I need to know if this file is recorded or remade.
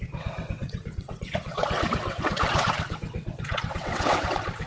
remade